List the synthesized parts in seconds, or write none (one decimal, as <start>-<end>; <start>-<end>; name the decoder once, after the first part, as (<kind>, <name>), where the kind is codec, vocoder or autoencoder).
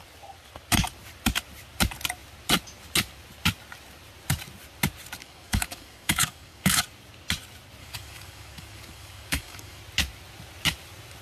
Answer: 5.2-6.8 (codec, DAC); 7.8-9.8